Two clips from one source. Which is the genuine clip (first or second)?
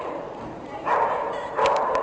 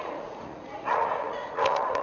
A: first